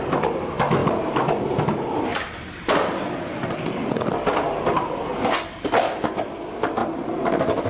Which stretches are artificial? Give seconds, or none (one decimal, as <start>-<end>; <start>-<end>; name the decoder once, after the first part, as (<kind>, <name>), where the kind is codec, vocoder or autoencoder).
0.8-1.6 (vocoder, BigVGAN v2); 2.1-3.3; 6.8-7.7